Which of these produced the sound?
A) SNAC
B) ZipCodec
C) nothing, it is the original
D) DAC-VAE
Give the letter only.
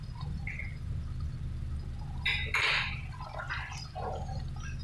C